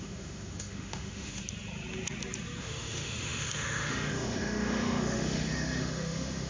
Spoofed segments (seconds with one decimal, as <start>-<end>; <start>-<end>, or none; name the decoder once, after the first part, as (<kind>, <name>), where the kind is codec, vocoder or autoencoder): 0.0-1.4 (autoencoder, DAC-VAE); 2.6-6.5